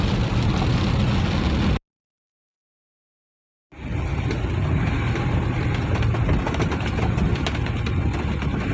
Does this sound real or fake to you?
real